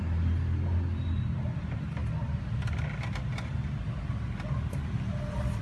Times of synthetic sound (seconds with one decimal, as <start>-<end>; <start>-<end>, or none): none